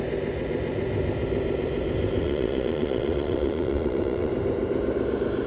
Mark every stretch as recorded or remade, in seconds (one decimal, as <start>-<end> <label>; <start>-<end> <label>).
0.0-2.2 recorded; 2.2-4.3 remade; 4.3-5.5 recorded